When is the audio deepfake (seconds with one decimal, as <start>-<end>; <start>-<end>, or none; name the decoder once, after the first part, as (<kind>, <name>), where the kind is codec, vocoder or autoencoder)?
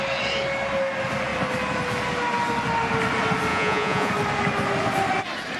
3.5-4.1 (vocoder, Vocos)